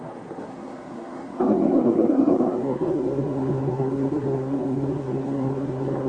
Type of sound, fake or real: fake